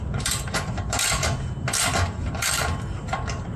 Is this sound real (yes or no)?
no